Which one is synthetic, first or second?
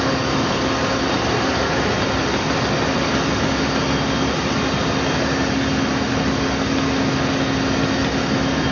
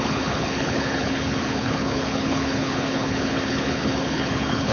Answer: second